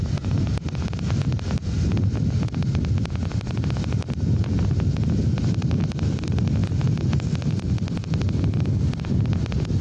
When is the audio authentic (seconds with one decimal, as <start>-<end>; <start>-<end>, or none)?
0.0-9.8